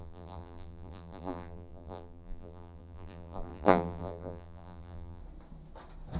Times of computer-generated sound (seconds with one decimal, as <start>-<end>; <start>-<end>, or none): 0.0-5.2